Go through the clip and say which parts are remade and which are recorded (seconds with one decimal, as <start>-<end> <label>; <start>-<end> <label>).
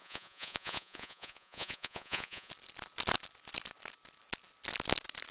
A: 0.0-2.5 remade; 2.5-5.3 recorded